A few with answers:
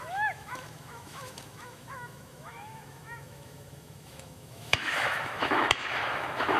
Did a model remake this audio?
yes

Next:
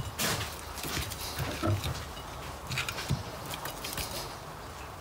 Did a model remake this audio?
no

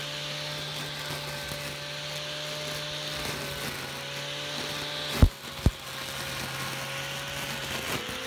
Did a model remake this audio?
no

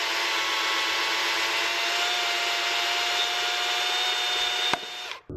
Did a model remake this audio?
no